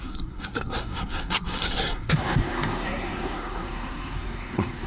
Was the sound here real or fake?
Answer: fake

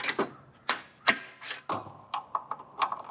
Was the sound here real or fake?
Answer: real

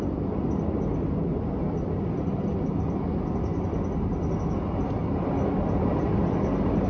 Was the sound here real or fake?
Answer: real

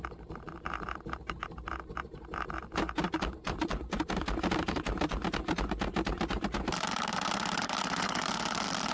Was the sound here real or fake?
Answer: fake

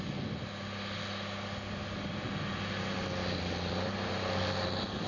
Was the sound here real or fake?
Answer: real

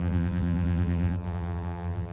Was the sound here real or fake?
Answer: fake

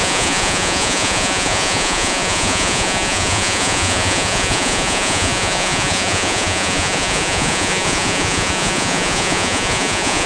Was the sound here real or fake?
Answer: fake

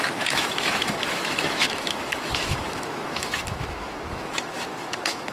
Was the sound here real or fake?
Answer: fake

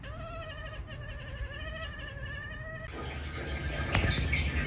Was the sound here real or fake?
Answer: real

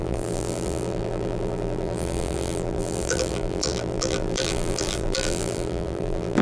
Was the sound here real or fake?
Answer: fake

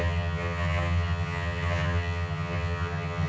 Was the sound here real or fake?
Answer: fake